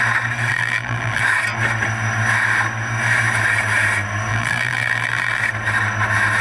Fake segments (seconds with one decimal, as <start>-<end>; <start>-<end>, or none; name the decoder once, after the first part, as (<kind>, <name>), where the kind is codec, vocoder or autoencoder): 0.5-1.2 (vocoder, BigVGAN v2); 4.3-5.4